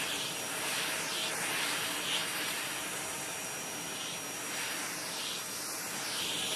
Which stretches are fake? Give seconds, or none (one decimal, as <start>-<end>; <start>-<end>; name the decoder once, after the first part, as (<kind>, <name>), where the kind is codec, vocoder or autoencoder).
none